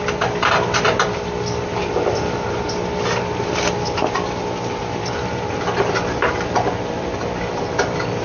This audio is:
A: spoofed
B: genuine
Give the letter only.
B